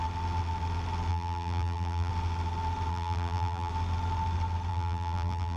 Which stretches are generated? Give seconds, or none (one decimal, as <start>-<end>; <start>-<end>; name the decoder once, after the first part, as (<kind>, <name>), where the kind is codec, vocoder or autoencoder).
1.1-2.1 (vocoder, BigVGAN v2); 2.9-3.7; 4.7-5.6